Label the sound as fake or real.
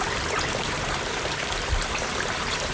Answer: real